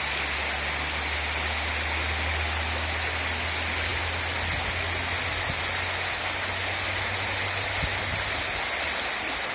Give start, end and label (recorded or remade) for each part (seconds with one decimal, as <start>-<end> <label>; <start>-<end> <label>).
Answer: 0.0-9.5 recorded